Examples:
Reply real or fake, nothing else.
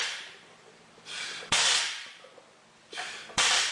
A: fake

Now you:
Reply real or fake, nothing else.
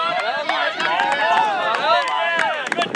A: real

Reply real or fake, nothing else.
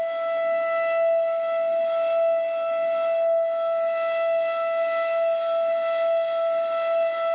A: real